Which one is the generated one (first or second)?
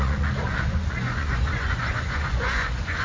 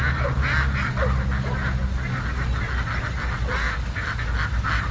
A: first